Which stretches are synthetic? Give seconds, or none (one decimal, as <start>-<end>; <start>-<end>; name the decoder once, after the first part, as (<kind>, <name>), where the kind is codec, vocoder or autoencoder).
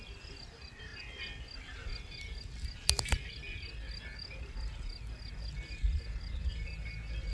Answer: none